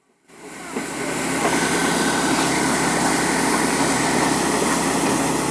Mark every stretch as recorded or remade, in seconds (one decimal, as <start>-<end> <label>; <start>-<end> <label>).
0.0-1.8 recorded; 1.8-5.1 remade; 5.1-5.5 recorded